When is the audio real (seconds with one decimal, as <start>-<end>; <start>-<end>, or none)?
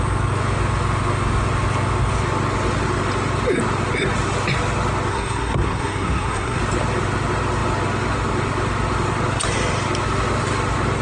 0.0-5.1; 6.6-11.0